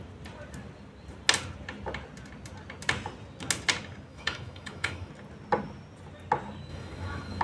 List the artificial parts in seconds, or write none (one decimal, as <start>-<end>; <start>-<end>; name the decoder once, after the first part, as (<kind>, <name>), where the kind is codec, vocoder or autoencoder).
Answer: 4.1-5.1 (autoencoder, DAC-VAE); 6.7-7.4